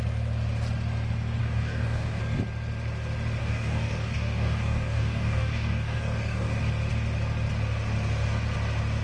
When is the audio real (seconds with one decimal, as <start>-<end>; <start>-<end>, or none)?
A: 0.0-1.4; 2.2-3.4; 6.6-9.0